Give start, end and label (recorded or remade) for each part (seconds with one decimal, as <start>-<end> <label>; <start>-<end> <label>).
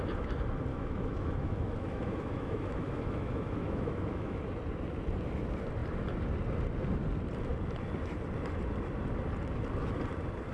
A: 0.0-0.7 recorded; 0.7-4.4 remade; 4.4-10.5 recorded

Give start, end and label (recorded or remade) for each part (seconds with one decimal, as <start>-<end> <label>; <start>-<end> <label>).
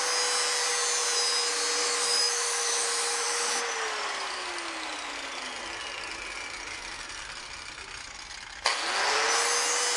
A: 0.0-1.8 recorded; 1.8-3.6 remade; 3.6-10.0 recorded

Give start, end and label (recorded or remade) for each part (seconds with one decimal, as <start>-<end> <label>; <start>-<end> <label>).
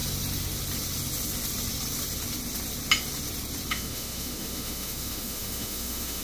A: 0.0-3.7 recorded; 3.7-6.2 remade